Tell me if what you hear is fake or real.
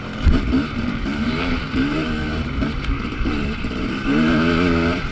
fake